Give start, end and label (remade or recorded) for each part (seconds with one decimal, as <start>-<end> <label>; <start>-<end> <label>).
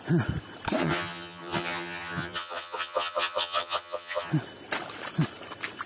0.0-0.8 recorded; 0.8-4.3 remade; 4.3-5.9 recorded